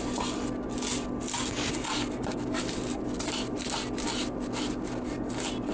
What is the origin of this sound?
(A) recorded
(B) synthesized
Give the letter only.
A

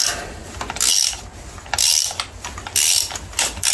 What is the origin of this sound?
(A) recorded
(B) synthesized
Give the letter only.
A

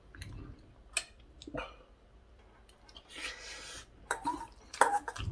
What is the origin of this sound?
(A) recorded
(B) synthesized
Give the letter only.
A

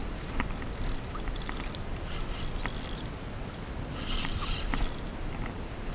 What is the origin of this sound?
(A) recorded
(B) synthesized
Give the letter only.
A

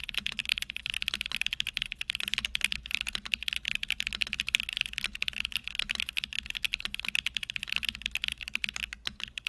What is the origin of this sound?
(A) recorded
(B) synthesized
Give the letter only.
A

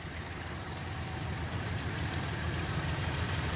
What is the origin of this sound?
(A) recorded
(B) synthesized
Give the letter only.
B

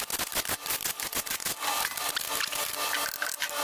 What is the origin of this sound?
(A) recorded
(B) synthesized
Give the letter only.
A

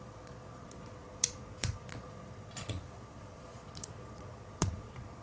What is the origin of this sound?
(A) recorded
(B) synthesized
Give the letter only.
B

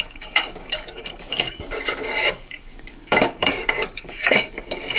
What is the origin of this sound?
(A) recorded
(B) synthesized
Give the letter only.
B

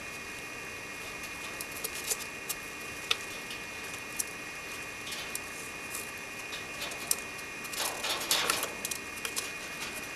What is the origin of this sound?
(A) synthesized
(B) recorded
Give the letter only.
B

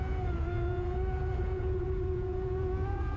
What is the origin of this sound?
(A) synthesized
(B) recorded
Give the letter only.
A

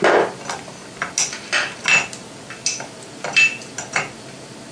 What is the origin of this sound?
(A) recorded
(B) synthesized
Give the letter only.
A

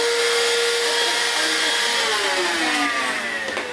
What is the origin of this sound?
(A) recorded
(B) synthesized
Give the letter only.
A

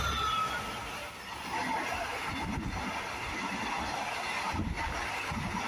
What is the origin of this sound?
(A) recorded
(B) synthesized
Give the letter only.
A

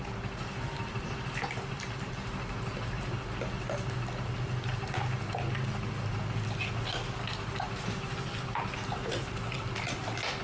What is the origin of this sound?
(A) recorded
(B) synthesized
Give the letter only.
A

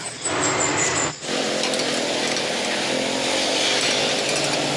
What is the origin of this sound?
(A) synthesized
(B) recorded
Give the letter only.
B